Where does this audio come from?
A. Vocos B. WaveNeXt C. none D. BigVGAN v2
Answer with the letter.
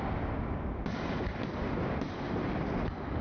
C